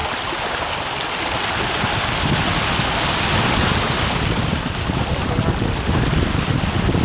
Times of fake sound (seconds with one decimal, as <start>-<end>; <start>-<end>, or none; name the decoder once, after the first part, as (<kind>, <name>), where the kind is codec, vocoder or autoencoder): none